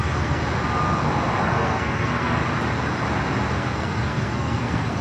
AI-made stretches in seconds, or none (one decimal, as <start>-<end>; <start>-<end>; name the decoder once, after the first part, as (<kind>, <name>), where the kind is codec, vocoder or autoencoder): 0.0-0.4 (codec, SNAC); 1.4-2.4; 3.5-5.0